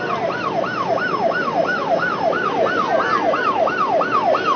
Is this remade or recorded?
recorded